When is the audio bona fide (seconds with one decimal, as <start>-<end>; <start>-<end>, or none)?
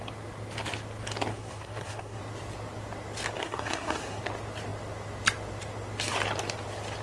0.0-1.3; 2.2-3.4; 4.2-7.0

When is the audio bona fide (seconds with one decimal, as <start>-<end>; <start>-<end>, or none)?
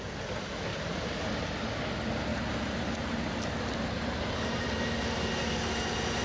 0.0-0.7; 1.6-2.3; 5.3-6.2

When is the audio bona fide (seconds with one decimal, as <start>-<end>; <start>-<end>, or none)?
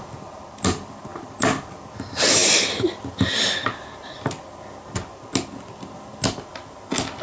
0.0-7.2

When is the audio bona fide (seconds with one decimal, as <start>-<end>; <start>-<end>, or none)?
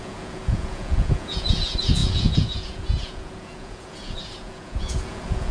none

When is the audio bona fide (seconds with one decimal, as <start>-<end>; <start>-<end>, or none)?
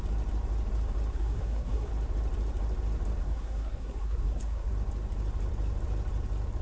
0.0-1.1; 1.9-3.2; 4.7-6.6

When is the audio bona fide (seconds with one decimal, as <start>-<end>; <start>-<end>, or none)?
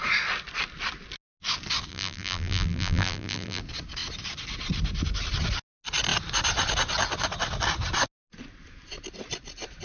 0.0-1.9; 3.6-9.8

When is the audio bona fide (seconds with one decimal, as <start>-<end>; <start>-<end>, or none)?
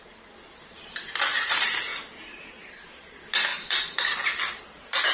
0.0-5.1